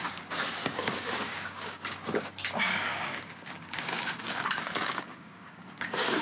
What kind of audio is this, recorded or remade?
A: remade